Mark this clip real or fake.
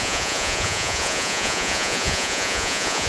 fake